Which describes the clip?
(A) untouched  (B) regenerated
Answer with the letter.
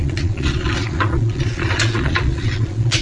B